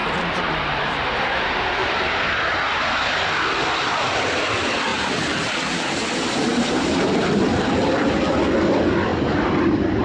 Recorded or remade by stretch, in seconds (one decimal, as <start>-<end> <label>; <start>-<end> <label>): 0.0-0.9 remade; 0.9-1.8 recorded; 1.8-2.3 remade; 2.3-4.9 recorded; 4.9-7.4 remade; 7.4-9.1 recorded; 9.1-10.0 remade